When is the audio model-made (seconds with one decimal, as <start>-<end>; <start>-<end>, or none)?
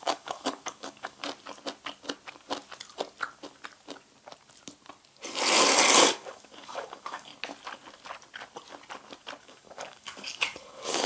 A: 0.0-1.2; 6.0-7.3; 9.4-11.1